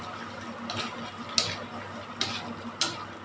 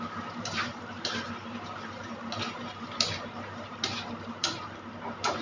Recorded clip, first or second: first